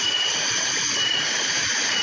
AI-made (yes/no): yes